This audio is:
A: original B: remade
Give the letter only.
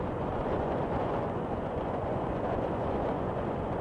B